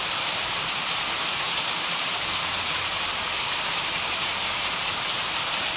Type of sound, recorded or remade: remade